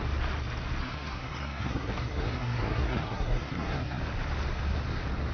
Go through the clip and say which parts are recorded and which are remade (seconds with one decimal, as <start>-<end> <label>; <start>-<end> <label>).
0.0-0.8 recorded; 0.8-4.0 remade; 4.0-5.3 recorded